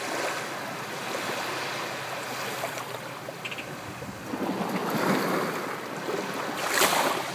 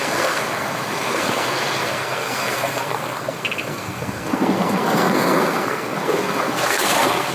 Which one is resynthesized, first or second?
second